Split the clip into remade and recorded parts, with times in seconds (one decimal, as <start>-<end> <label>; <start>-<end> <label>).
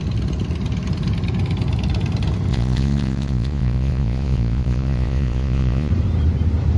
0.0-2.5 recorded; 2.5-5.9 remade; 5.9-6.8 recorded